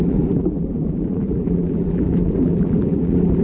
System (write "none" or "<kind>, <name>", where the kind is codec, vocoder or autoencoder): vocoder, BigVGAN v2